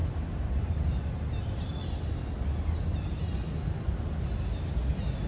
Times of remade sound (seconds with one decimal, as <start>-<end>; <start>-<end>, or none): none